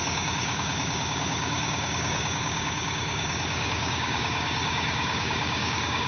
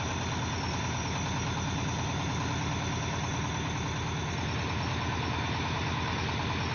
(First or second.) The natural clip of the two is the second